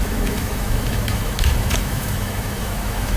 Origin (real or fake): fake